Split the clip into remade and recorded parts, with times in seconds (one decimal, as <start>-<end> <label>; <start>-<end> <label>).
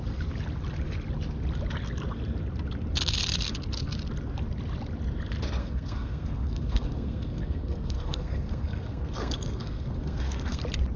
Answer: 0.0-5.6 recorded; 5.6-10.6 remade; 10.6-11.0 recorded